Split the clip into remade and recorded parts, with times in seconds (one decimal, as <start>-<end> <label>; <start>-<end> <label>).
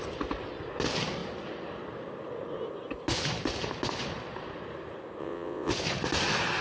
0.0-5.2 recorded; 5.2-5.7 remade; 5.7-6.6 recorded